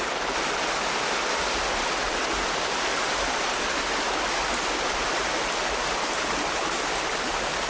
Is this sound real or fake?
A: real